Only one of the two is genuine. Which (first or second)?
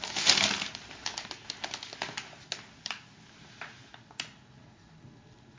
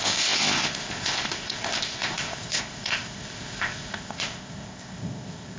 first